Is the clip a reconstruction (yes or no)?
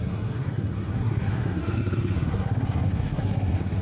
yes